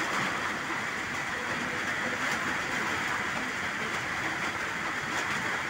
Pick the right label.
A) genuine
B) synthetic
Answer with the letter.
A